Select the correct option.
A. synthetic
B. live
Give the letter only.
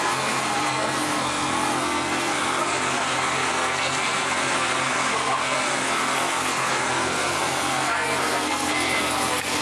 A